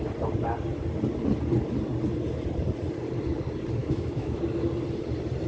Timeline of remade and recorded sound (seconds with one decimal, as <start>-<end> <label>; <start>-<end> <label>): 0.0-3.8 recorded; 3.8-4.4 remade; 4.4-5.5 recorded